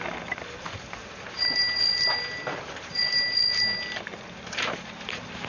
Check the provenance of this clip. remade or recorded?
recorded